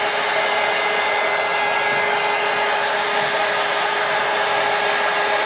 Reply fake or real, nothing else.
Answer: real